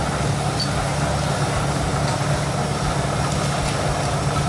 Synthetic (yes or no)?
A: no